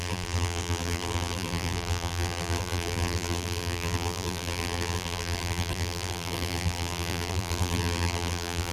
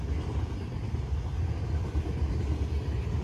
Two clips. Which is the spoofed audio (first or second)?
first